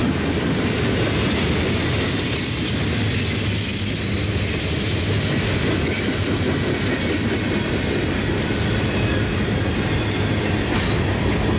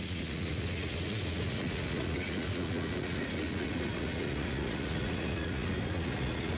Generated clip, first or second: second